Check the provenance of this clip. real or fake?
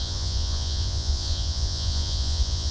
fake